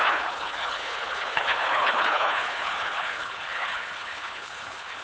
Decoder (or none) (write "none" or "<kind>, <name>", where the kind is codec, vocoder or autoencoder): codec, HILCodec